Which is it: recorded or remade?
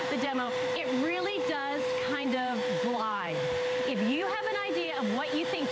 remade